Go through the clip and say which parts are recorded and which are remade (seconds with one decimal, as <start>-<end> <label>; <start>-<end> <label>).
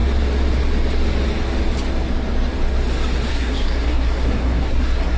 0.0-3.3 recorded; 3.3-5.2 remade